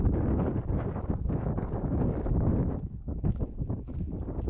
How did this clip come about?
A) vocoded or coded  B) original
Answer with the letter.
A